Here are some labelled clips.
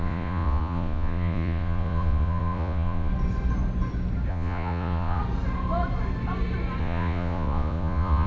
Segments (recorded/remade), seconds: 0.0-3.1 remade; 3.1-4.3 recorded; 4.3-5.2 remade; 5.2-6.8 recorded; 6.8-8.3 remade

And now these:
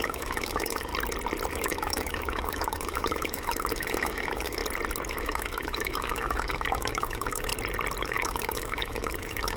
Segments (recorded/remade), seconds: 0.0-0.9 remade; 0.9-1.5 recorded; 1.5-4.6 remade; 4.6-5.1 recorded; 5.1-7.5 remade; 7.5-8.0 recorded; 8.0-9.6 remade

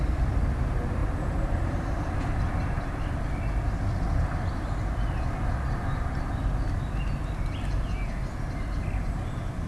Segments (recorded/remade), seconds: 0.0-9.7 recorded

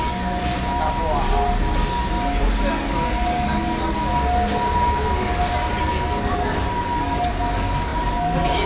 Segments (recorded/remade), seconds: 0.0-0.5 remade; 0.5-2.7 recorded; 2.7-4.1 remade; 4.1-5.8 recorded; 5.8-8.7 remade

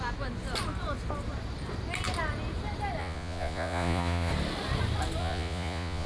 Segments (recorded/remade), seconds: 0.0-3.0 recorded; 3.0-4.3 remade; 4.3-5.2 recorded; 5.2-6.1 remade

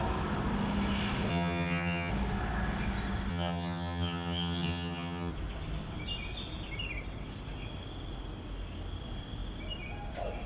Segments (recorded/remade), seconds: 0.0-1.3 recorded; 1.3-2.1 remade; 2.1-3.3 recorded; 3.3-5.3 remade; 5.3-10.5 recorded

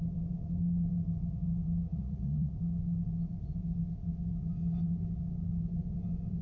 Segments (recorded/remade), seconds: 0.0-1.9 recorded; 1.9-2.5 remade; 2.5-6.4 recorded